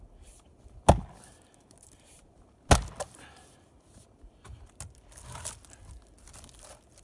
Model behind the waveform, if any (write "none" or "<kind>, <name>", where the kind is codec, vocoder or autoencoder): none